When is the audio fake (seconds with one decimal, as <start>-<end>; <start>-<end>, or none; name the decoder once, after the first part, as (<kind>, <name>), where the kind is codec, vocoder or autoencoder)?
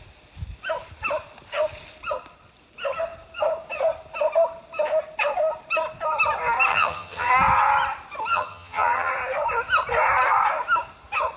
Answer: 6.7-7.3 (vocoder, HiFi-GAN); 8.3-9.1